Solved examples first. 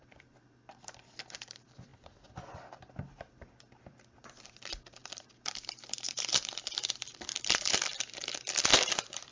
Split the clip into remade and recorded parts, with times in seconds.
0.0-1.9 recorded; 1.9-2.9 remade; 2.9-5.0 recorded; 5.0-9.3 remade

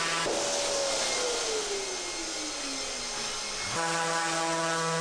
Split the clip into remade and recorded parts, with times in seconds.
0.0-5.0 recorded

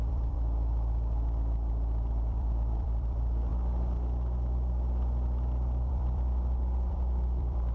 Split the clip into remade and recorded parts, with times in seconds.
0.0-3.5 remade; 3.5-5.9 recorded; 5.9-7.7 remade

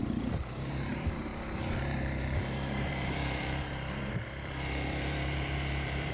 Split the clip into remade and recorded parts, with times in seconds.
0.0-1.3 remade; 1.3-1.8 recorded; 1.8-6.1 remade

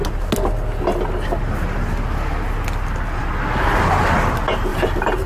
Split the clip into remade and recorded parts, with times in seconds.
0.0-4.7 recorded; 4.7-5.3 remade

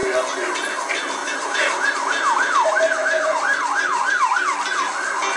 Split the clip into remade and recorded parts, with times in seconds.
0.0-1.2 recorded; 1.2-4.4 remade; 4.4-5.4 recorded

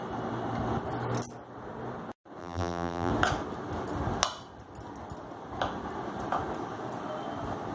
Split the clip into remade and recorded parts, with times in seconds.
0.0-2.4 recorded; 2.4-3.1 remade; 3.1-7.7 recorded